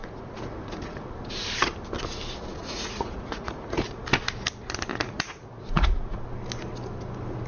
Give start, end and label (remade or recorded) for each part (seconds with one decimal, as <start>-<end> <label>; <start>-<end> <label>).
0.0-1.1 remade; 1.1-2.6 recorded; 2.6-4.0 remade; 4.0-4.9 recorded; 4.9-6.2 remade; 6.2-7.5 recorded